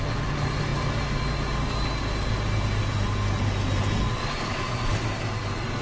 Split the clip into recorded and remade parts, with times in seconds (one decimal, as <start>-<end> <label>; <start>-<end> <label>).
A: 0.0-5.8 recorded